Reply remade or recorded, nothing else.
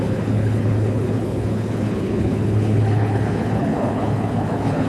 remade